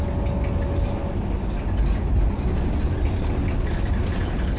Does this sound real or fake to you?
real